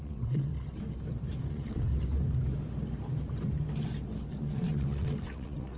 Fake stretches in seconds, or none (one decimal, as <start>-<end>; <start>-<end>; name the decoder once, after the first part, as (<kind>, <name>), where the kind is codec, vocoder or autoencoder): 0.0-0.5 (vocoder, WaveNeXt); 1.5-1.9; 4.4-5.8